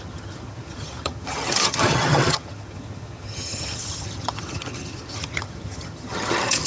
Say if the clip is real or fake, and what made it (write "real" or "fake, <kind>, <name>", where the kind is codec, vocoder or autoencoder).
fake, vocoder, HiFi-GAN